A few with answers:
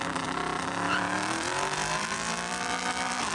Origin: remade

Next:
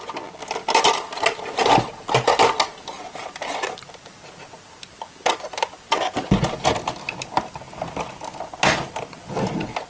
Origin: recorded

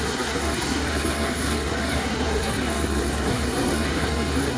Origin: remade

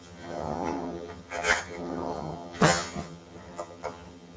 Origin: remade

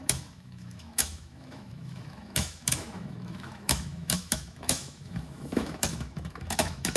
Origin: remade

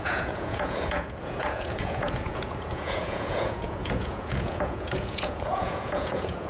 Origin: remade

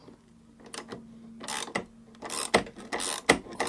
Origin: recorded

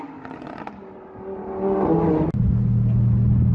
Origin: recorded